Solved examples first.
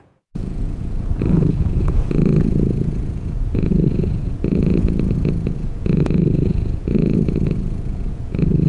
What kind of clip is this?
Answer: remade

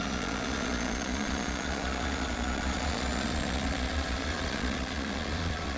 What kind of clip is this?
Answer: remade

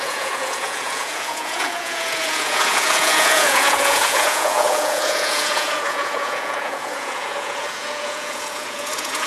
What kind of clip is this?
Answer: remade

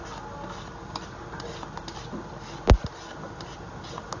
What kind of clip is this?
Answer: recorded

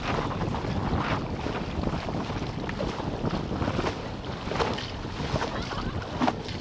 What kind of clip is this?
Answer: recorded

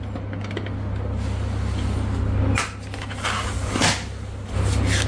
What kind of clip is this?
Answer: recorded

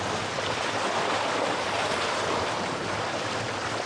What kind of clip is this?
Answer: recorded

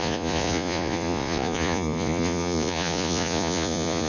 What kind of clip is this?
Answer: remade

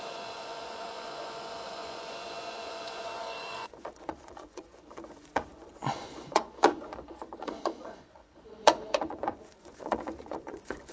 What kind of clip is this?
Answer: remade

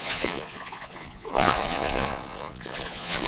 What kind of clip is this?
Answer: remade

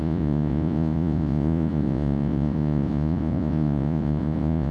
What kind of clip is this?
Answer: remade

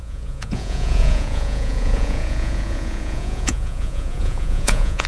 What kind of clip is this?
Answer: remade